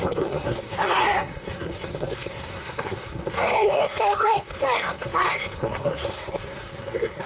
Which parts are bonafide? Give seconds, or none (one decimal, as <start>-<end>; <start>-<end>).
none

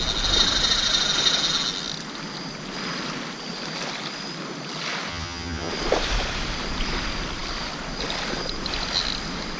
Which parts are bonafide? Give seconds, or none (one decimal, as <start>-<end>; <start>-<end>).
0.0-5.1; 5.7-9.6

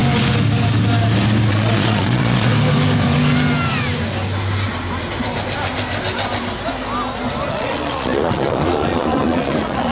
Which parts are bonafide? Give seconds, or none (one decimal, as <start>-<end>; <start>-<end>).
0.0-1.5; 2.5-7.5

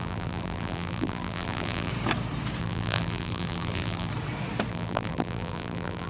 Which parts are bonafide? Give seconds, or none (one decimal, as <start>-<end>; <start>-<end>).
1.9-2.6; 4.1-4.7

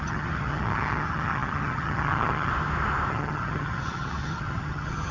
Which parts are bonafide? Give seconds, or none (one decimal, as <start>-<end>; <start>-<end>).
2.5-3.1

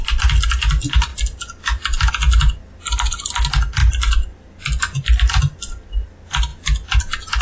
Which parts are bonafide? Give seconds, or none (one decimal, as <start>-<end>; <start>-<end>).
0.0-7.4

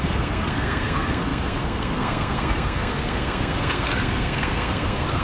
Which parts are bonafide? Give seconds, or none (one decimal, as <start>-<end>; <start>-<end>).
none

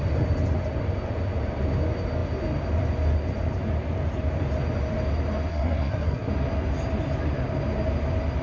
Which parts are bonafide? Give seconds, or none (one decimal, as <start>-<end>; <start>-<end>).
0.0-5.5; 6.3-8.4